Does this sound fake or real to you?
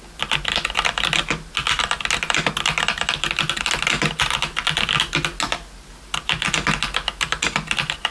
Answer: real